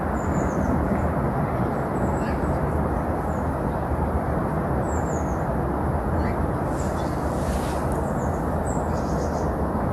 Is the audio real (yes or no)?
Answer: yes